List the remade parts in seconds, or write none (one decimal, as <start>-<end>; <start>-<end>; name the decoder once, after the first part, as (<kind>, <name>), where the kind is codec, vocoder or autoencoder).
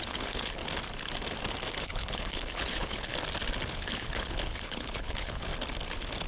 0.0-0.6 (codec, HILCodec); 1.8-3.1; 3.7-5.5